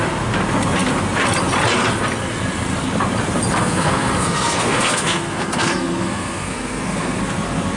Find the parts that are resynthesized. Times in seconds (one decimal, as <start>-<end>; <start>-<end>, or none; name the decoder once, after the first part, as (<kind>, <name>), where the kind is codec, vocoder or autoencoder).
3.6-7.2 (codec, SNAC)